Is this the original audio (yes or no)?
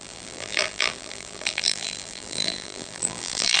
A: no